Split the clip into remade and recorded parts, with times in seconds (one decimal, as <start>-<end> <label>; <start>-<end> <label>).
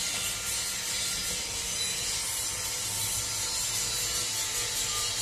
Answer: 0.0-5.2 recorded